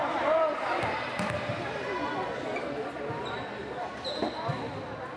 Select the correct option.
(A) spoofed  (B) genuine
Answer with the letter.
B